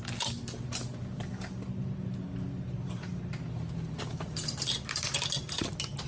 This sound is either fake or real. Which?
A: real